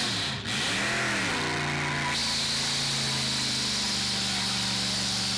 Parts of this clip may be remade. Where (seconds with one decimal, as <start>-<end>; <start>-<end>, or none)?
none